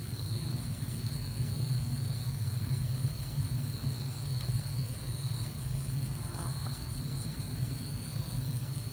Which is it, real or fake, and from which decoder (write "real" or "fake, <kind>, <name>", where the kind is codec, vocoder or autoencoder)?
fake, codec, SNAC